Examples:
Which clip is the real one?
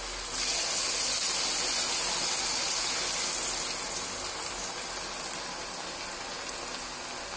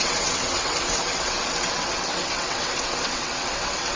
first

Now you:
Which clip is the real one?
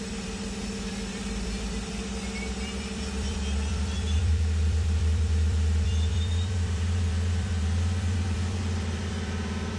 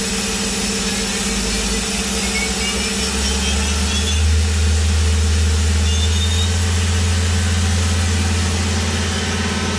second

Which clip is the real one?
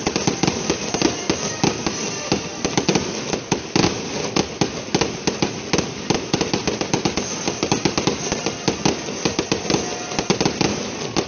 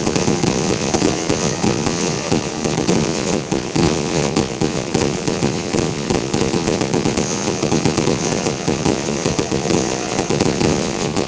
first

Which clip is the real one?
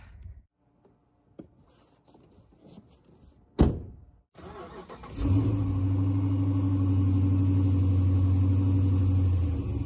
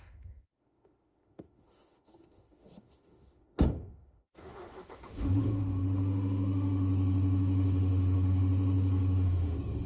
first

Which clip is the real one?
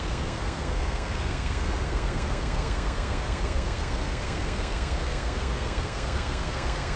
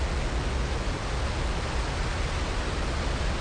second